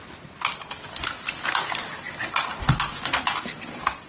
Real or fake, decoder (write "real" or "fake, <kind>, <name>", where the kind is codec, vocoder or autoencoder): real